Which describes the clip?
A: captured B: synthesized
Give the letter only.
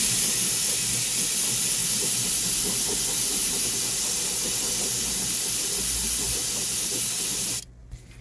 A